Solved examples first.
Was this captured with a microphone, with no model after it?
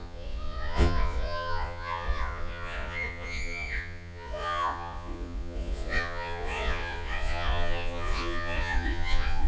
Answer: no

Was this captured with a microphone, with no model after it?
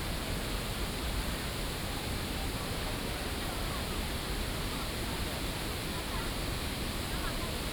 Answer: no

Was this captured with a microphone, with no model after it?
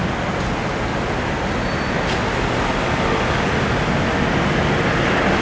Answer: yes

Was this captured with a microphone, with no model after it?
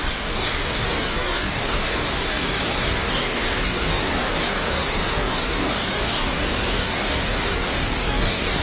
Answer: no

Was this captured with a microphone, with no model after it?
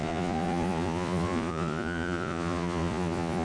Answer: no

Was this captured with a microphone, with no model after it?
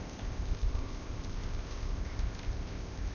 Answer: no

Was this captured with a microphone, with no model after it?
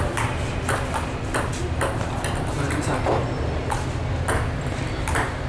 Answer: yes